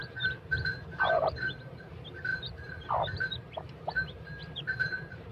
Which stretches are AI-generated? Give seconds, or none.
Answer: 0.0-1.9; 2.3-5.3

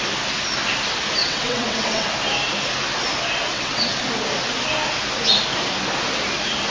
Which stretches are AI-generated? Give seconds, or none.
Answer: 1.2-2.1; 3.5-4.0

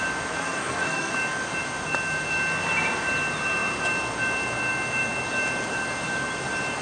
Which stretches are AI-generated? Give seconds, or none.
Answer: 0.4-1.1

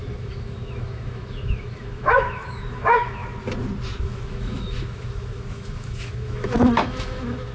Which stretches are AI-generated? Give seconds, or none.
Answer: 0.0-3.2; 4.0-7.5

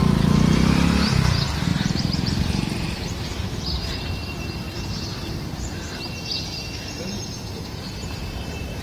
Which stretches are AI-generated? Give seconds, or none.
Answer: 1.7-4.8; 8.0-8.8

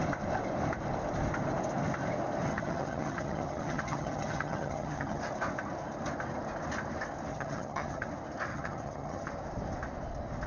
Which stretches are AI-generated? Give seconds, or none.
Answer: 2.5-5.2; 7.3-8.1; 8.5-9.3

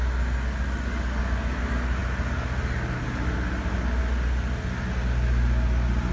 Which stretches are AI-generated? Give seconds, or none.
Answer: none